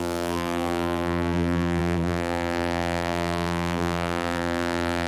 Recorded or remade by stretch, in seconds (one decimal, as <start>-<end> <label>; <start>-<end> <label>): 0.0-5.1 remade